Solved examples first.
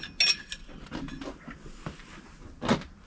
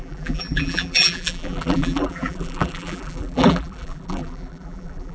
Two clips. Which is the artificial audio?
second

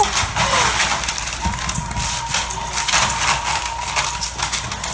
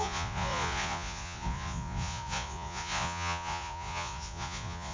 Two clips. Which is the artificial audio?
second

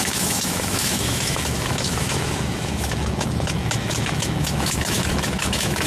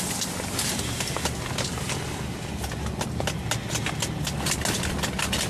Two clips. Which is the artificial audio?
first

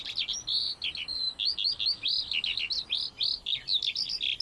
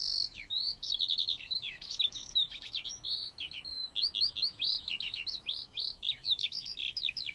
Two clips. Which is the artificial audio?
second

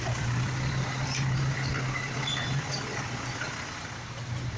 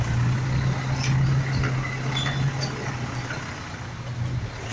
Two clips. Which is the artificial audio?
first